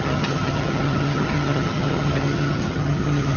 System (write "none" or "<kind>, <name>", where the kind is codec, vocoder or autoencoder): vocoder, HiFi-GAN